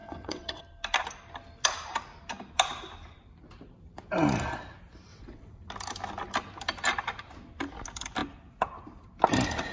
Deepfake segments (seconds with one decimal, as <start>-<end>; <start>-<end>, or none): 0.0-0.6; 5.1-5.7